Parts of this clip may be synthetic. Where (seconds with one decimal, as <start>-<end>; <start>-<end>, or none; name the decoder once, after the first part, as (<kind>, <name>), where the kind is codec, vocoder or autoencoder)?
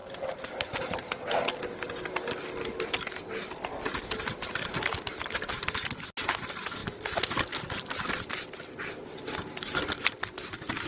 none